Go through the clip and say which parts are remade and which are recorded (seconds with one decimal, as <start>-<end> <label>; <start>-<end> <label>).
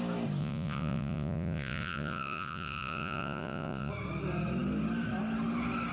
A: 0.0-0.4 recorded; 0.4-3.9 remade; 3.9-5.9 recorded